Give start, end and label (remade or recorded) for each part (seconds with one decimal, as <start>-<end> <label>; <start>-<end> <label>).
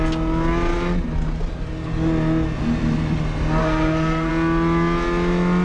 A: 0.0-3.6 recorded; 3.6-4.3 remade; 4.3-5.6 recorded